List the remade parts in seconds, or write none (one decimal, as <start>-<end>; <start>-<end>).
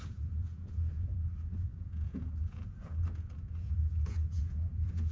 0.0-5.1